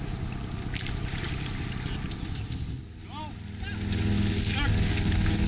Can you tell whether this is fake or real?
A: real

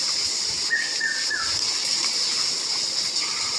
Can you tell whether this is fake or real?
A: real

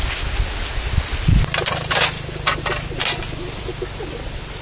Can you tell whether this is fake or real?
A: real